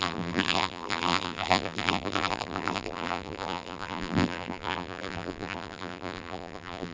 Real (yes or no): no